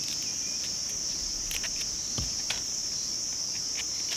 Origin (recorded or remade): recorded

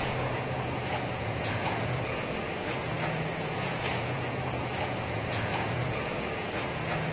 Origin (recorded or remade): remade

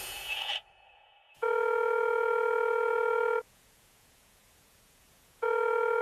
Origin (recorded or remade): remade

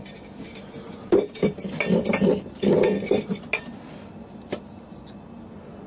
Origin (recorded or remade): recorded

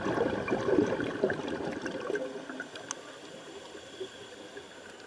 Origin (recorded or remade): recorded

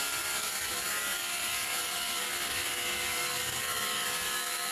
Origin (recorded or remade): remade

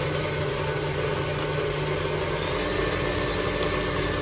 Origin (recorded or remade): recorded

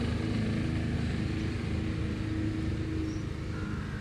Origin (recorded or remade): recorded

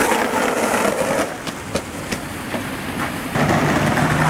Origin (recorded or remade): recorded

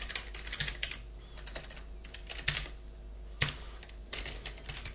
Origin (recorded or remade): recorded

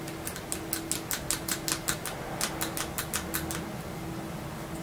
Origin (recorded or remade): recorded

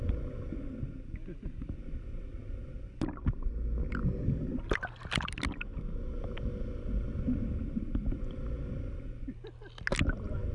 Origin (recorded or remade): recorded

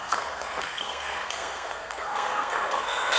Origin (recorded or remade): remade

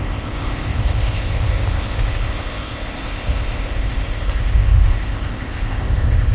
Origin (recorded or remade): remade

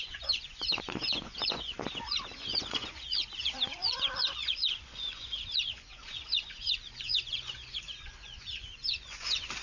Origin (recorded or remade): remade